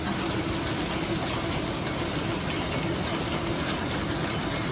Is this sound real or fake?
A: real